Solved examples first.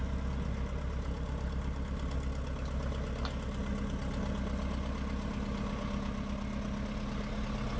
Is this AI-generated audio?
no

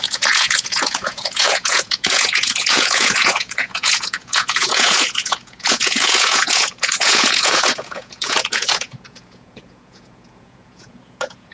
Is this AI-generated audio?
yes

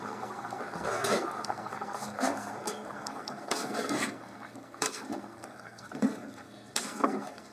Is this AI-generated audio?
yes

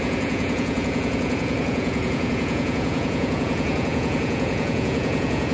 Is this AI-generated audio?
yes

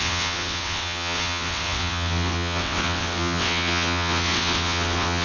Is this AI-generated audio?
yes